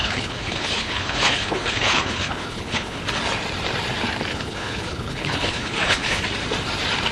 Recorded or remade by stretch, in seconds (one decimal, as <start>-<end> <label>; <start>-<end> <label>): 0.0-3.0 remade; 3.0-4.3 recorded; 4.3-6.2 remade; 6.2-7.1 recorded